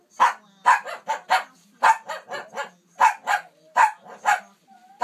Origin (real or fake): real